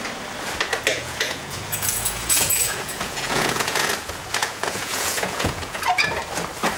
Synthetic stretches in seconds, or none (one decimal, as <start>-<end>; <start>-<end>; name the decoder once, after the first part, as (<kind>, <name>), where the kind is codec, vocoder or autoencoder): 0.9-3.9 (vocoder, Vocos); 4.4-5.8